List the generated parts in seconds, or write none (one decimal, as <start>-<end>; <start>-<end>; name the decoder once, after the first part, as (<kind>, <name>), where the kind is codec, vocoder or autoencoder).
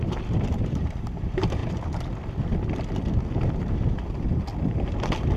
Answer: 0.0-1.6 (vocoder, BigVGAN v2); 4.8-5.4